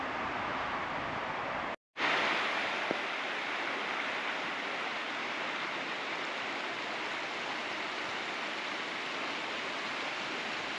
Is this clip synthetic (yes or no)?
no